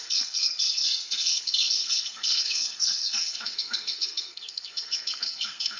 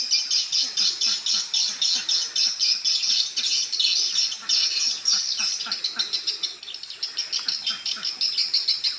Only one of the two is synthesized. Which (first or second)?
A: first